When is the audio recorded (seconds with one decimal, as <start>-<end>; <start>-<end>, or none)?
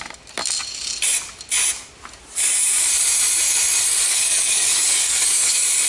0.0-4.1; 5.5-5.9